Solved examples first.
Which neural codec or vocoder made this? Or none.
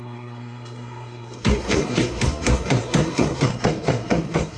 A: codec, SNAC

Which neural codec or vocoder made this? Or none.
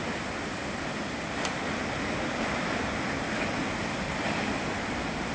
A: none